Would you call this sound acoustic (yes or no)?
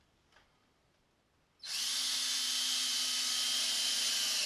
yes